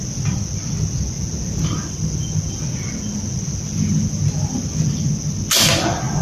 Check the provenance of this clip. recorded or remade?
recorded